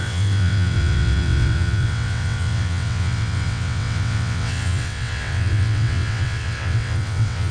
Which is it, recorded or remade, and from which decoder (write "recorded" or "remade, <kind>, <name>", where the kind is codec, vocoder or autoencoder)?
remade, vocoder, WaveNeXt